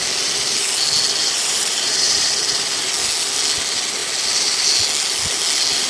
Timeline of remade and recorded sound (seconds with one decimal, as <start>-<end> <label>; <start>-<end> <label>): 0.0-1.2 recorded; 1.2-2.4 remade; 2.4-5.9 recorded